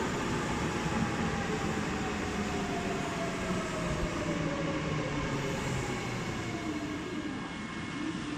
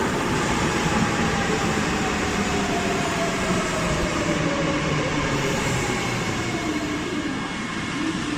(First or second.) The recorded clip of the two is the first